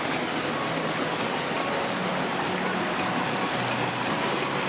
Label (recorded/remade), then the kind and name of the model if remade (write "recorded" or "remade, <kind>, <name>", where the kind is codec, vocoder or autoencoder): recorded